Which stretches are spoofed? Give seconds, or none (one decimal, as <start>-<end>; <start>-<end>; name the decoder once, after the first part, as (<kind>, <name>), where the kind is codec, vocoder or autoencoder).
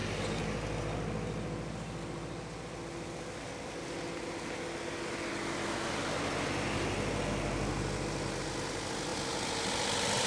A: 0.0-4.7 (vocoder, BigVGAN v2)